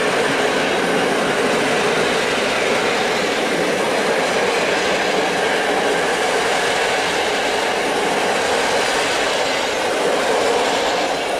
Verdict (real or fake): real